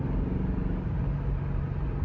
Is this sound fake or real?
real